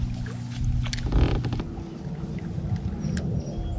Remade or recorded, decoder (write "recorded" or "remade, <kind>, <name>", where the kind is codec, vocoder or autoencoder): recorded